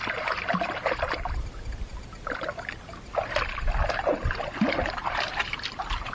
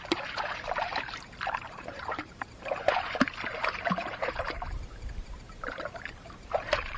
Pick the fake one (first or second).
second